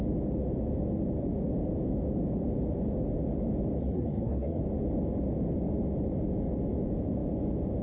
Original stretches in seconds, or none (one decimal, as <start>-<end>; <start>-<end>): 0.0-3.8; 4.6-7.8

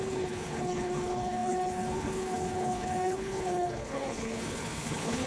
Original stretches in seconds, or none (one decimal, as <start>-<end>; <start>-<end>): none

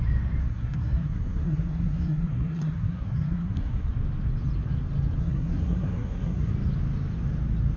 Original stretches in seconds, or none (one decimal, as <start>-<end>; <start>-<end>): 0.0-0.4; 3.9-5.2; 6.5-7.8

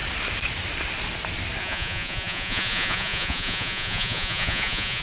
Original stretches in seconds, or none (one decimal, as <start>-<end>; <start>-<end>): 0.0-1.6

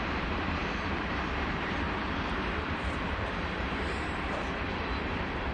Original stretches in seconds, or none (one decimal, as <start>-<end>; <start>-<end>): none